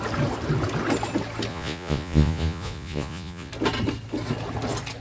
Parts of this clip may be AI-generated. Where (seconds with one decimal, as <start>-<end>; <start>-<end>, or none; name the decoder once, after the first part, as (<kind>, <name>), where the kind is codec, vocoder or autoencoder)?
1.5-3.5 (vocoder, Vocos)